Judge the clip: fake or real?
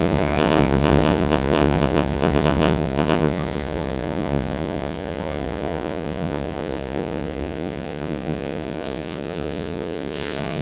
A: fake